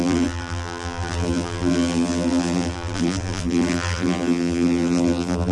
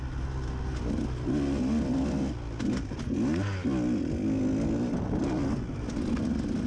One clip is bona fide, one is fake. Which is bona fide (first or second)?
second